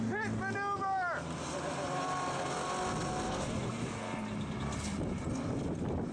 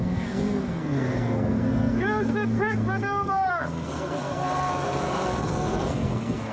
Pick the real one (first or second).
first